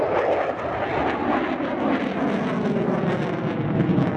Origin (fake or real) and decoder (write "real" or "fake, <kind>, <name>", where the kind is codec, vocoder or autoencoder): real